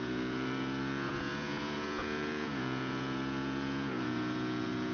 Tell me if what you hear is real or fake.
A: fake